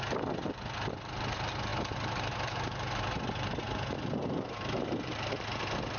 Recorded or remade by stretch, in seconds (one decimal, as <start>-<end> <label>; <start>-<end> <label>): 0.0-6.0 recorded